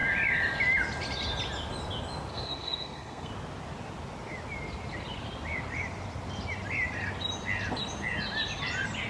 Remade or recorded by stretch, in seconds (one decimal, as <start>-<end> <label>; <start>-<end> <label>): 0.0-2.3 recorded; 2.3-3.3 remade; 3.3-9.1 recorded